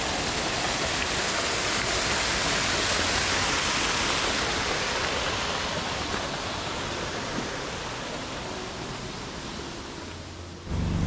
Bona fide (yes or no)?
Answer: yes